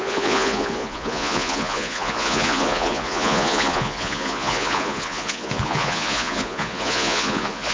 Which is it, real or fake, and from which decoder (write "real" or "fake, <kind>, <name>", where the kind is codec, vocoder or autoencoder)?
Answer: fake, vocoder, Vocos